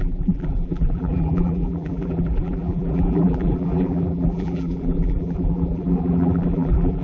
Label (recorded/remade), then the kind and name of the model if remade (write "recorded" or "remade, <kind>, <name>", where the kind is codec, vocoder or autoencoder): remade, vocoder, BigVGAN v2